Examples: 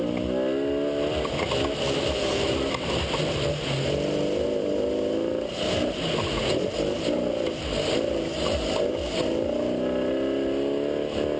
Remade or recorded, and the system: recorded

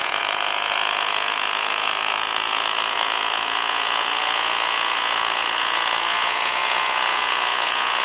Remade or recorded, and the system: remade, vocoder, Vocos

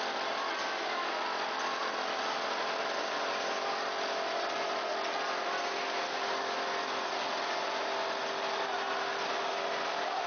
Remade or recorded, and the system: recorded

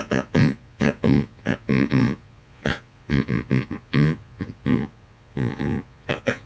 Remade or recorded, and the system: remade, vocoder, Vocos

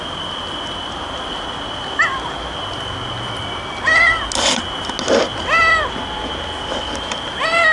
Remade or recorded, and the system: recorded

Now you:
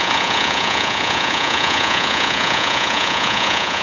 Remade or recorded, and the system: remade, vocoder, Vocos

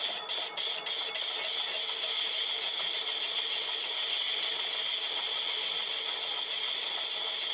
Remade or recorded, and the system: recorded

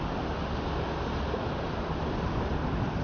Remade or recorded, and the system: recorded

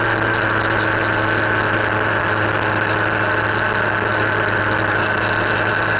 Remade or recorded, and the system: recorded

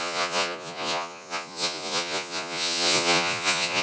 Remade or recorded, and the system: remade, vocoder, Vocos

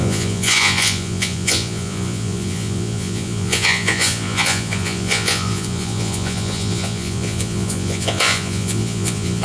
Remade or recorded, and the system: remade, vocoder, Vocos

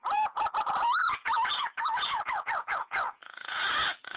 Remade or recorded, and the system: remade, vocoder, Vocos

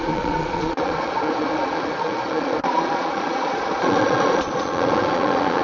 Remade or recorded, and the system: remade, vocoder, Vocos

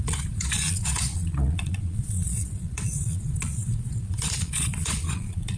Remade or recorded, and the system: remade, vocoder, Vocos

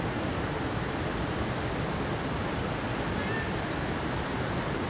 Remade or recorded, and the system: recorded